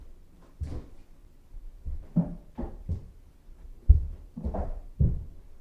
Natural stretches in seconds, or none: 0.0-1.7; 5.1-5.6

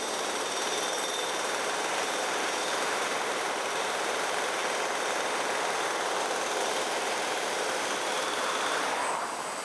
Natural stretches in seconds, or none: 4.6-6.6

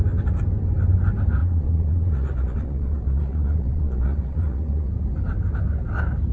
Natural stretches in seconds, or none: 0.0-1.4; 4.9-6.3